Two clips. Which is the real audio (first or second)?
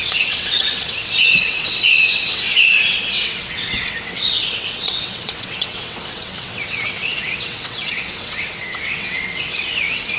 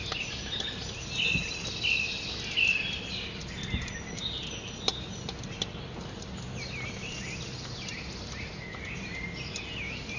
second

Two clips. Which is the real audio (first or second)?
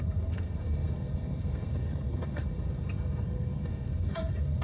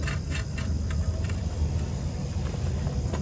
second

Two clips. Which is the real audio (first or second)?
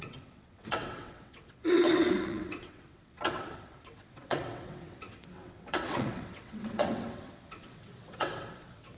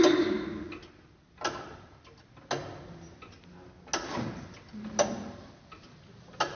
second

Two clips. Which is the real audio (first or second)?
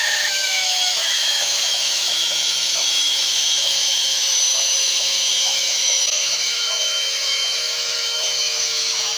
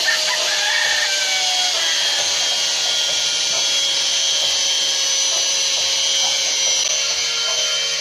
second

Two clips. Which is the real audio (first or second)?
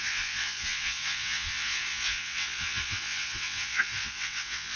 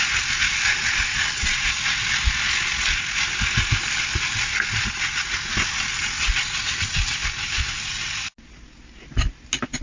second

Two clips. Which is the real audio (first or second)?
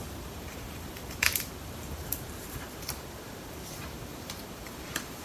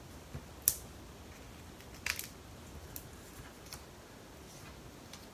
second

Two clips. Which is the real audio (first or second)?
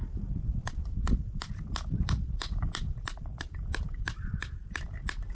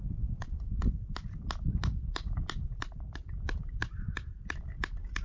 second